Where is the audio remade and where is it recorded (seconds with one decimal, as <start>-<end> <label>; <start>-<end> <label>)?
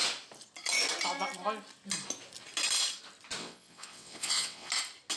0.0-3.4 recorded; 3.4-4.7 remade; 4.7-5.2 recorded